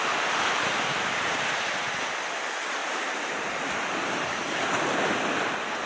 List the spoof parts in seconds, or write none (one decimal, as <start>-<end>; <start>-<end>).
0.0-1.8; 2.8-4.4